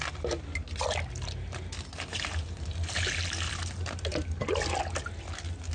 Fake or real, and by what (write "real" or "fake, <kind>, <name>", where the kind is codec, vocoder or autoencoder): real